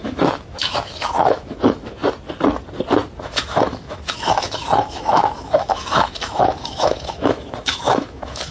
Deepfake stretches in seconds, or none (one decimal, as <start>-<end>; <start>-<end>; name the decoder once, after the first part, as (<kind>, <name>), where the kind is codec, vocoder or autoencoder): 0.0-2.0 (autoencoder, DAC-VAE); 3.2-8.5